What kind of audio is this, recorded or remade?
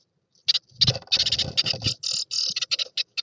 recorded